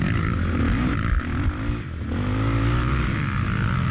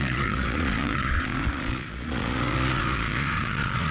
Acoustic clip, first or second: first